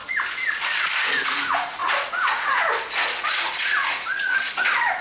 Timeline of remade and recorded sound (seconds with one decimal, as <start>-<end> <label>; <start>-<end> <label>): 0.0-1.3 recorded; 1.3-5.0 remade